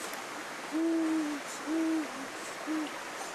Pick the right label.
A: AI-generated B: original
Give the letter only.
B